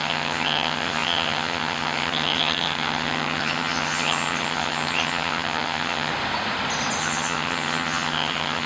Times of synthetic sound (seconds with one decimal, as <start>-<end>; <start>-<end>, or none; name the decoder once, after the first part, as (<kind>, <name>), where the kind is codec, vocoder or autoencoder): 0.0-6.1 (vocoder, HiFi-GAN); 7.0-8.7